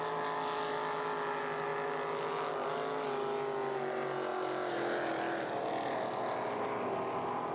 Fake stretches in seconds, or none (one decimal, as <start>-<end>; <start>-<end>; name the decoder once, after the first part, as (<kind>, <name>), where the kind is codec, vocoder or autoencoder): none